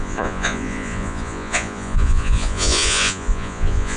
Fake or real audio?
fake